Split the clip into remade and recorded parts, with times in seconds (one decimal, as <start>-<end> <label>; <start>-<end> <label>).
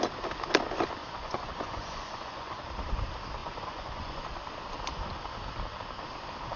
0.0-1.0 recorded; 1.0-2.6 remade; 2.6-3.4 recorded; 3.4-4.2 remade; 4.2-6.6 recorded